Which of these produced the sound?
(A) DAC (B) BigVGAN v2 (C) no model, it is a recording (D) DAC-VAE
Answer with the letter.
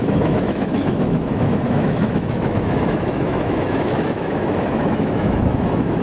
D